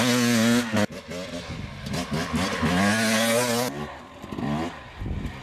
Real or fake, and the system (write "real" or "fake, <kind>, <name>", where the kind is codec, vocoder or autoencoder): real